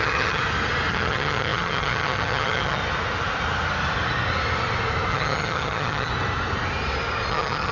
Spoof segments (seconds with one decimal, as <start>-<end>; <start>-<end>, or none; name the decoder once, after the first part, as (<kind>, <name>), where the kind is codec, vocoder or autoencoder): 0.0-0.4 (vocoder, HiFi-GAN); 0.9-2.8; 5.1-6.1; 7.3-7.7